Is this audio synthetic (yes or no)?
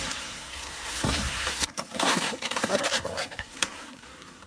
yes